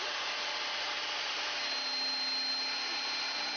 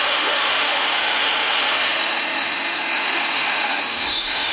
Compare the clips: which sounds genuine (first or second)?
first